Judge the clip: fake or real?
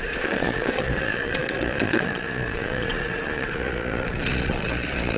fake